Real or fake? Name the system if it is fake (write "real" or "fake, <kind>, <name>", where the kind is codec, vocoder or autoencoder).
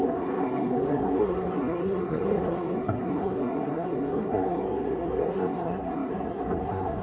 fake, codec, SNAC